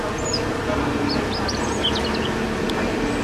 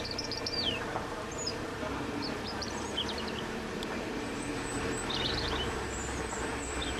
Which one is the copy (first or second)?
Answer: second